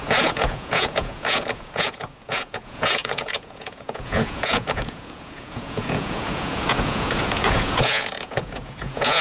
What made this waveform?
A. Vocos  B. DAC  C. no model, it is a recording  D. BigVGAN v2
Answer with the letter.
A